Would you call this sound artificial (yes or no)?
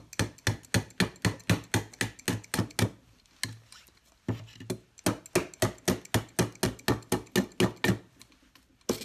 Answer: no